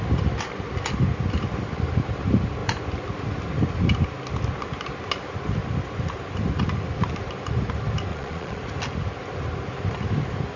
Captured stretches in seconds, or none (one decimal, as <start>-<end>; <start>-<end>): 0.0-8.1; 8.6-10.6